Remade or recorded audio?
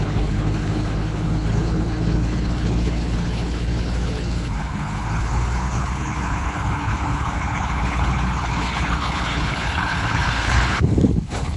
remade